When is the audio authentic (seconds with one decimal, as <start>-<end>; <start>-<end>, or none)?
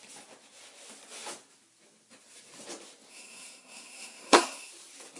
0.0-3.1; 4.7-5.2